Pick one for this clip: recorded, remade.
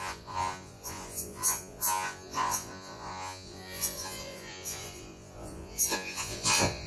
remade